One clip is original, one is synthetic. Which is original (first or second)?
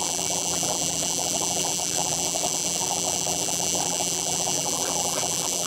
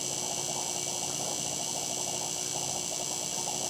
second